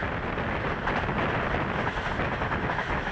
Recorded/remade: recorded